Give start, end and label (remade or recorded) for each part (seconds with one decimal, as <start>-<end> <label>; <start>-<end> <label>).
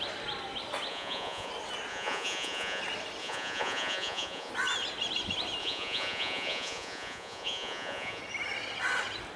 0.0-0.9 recorded; 0.9-1.5 remade; 1.5-1.9 recorded; 1.9-2.8 remade; 2.8-3.2 recorded; 3.2-4.5 remade; 4.5-5.6 recorded; 5.6-8.2 remade; 8.2-9.4 recorded